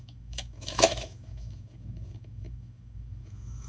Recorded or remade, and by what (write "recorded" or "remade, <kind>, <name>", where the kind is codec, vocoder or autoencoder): remade, autoencoder, DAC-VAE